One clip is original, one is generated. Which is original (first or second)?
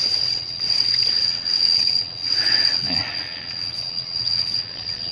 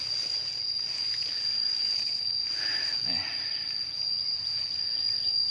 second